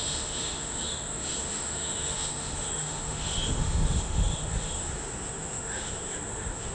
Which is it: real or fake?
fake